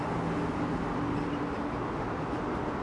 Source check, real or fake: real